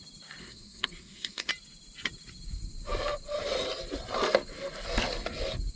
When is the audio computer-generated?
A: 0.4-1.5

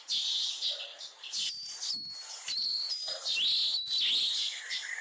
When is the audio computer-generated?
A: none

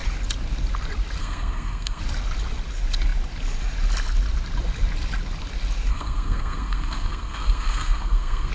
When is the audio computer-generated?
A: 1.2-2.0; 5.9-8.5

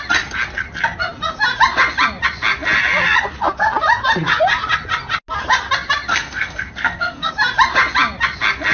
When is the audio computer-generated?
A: 6.1-7.3

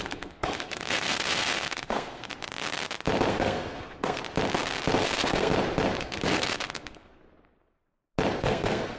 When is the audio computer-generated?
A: 0.0-2.3; 3.3-4.2; 5.0-5.5; 6.0-7.2; 8.4-9.0

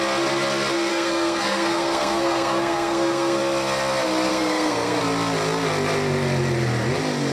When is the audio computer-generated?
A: 0.9-3.4; 4.3-5.0